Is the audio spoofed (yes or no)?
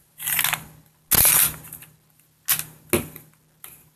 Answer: no